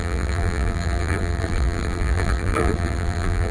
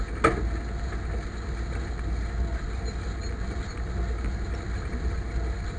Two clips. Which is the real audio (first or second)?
second